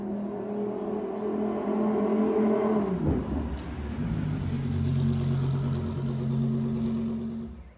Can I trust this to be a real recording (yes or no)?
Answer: yes